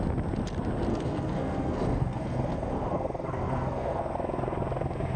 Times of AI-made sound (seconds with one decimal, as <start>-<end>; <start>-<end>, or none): 0.9-4.0